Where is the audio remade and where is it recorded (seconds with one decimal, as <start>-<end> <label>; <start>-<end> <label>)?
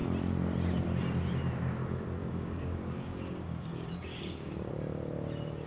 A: 0.0-2.2 recorded; 2.2-4.7 remade; 4.7-5.7 recorded